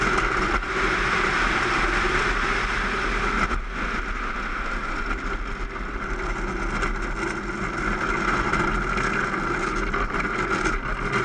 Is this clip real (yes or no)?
yes